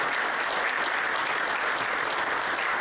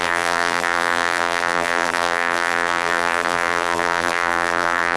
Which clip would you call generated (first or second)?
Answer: second